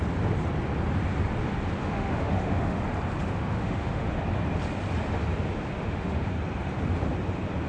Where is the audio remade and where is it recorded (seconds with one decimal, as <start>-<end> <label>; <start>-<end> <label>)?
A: 0.0-1.8 recorded; 1.8-2.8 remade; 2.8-3.2 recorded; 3.2-4.1 remade; 4.1-5.8 recorded; 5.8-6.3 remade; 6.3-7.7 recorded